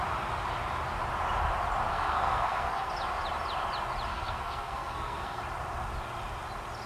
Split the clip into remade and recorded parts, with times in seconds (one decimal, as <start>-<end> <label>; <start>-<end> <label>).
0.0-1.9 recorded; 1.9-2.9 remade; 2.9-4.1 recorded; 4.1-5.4 remade; 5.4-6.9 recorded